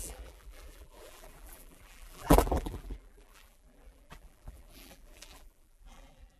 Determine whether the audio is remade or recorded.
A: remade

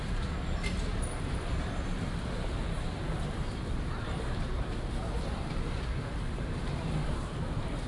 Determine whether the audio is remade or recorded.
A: remade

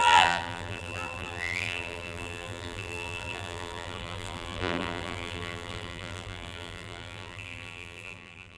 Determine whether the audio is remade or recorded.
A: remade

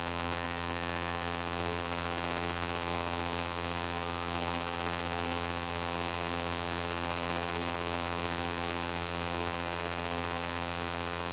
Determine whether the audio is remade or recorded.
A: remade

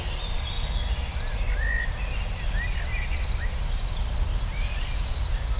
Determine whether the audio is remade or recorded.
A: recorded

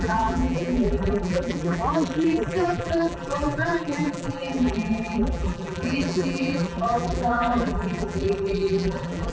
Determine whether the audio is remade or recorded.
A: remade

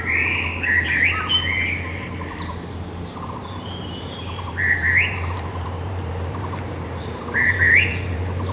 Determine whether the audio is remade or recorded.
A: remade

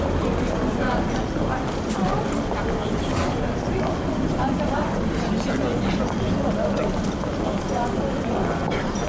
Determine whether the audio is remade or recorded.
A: recorded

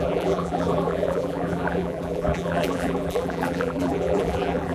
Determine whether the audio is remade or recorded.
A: remade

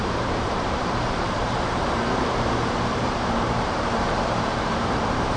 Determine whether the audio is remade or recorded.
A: remade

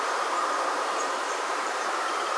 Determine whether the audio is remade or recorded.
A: remade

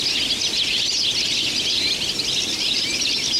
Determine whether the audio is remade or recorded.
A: recorded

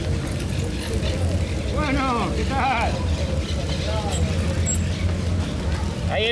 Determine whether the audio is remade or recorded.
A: recorded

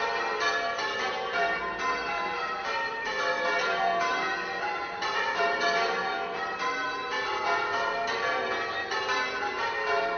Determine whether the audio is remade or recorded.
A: remade